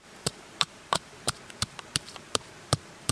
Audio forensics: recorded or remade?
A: remade